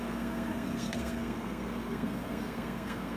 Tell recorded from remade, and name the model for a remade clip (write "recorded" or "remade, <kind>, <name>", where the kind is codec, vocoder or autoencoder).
remade, codec, SNAC